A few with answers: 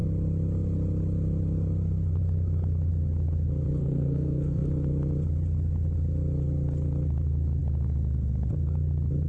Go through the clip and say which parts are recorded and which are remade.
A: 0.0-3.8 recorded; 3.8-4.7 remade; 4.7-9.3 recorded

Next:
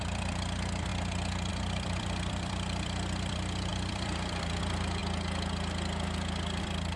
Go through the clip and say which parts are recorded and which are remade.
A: 0.0-0.9 remade; 0.9-1.5 recorded; 1.5-5.0 remade; 5.0-6.6 recorded; 6.6-7.0 remade

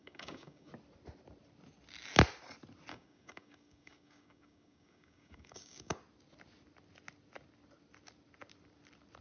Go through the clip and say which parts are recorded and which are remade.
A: 0.0-0.7 remade; 0.7-2.9 recorded; 2.9-6.0 remade; 6.0-9.2 recorded

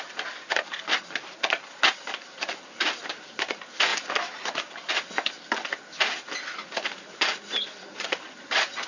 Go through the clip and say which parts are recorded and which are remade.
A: 0.0-8.9 recorded